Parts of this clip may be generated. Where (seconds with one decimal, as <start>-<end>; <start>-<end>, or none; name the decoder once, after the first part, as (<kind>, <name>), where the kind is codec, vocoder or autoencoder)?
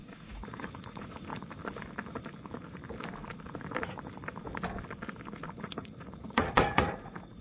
0.0-1.3 (vocoder, Vocos); 5.6-7.4